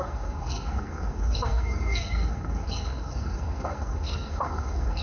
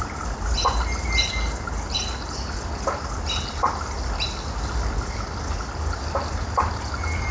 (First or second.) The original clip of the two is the second